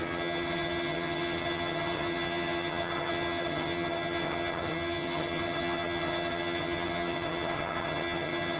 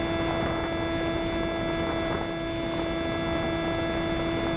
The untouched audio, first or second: second